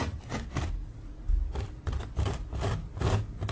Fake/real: real